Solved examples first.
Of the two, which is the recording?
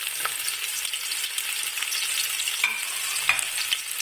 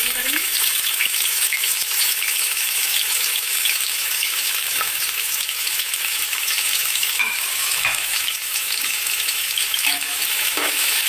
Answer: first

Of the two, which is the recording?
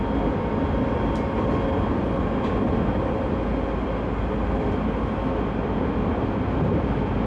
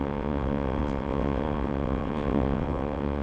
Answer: first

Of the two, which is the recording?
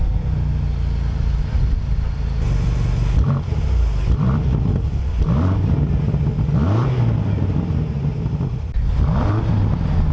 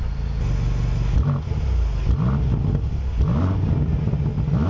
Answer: second